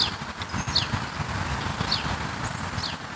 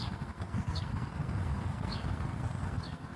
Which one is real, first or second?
first